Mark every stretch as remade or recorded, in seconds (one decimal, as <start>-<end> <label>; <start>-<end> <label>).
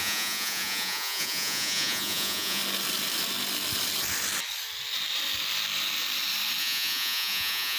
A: 0.0-2.6 remade; 2.6-6.6 recorded; 6.6-7.8 remade